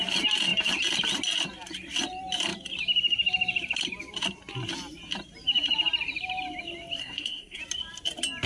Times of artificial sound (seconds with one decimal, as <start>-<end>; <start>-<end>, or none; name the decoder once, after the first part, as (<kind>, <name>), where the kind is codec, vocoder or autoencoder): 7.0-7.6 (codec, SNAC)